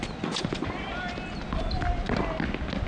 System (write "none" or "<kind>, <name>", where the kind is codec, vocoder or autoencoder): none